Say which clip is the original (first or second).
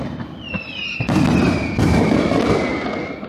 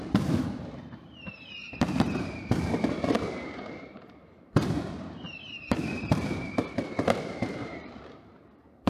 first